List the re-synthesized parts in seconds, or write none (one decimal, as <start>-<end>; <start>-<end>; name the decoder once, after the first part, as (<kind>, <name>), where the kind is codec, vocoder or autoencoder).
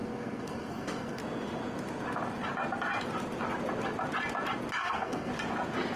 0.0-1.2 (codec, SNAC); 4.8-5.3